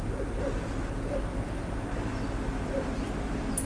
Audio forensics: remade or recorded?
recorded